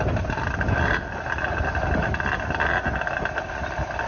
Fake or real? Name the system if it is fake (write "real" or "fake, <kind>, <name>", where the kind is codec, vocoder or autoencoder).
real